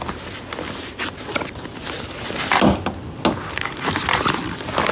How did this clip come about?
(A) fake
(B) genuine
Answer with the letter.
B